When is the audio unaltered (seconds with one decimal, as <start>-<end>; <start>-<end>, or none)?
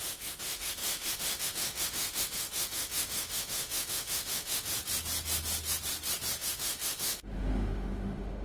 4.7-6.4